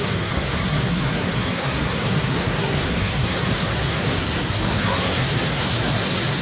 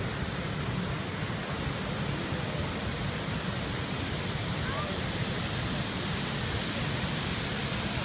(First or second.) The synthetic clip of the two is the first